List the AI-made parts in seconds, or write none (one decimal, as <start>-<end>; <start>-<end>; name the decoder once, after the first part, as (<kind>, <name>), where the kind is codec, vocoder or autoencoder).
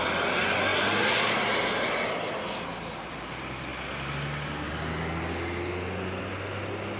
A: none